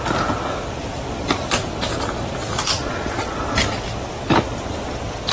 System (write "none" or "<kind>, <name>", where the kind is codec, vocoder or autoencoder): none